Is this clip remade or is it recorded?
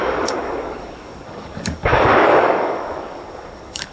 remade